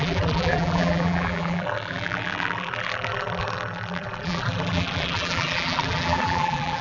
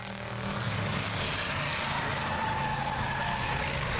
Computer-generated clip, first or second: first